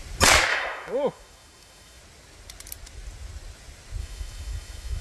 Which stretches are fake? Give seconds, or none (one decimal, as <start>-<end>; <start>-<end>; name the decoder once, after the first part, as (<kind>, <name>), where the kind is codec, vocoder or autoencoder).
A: 0.5-2.0 (autoencoder, DAC-VAE); 4.0-5.0